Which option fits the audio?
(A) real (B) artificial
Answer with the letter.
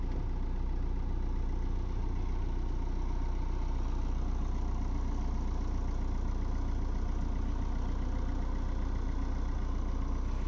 A